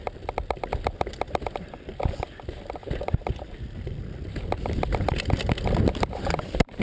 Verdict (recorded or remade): recorded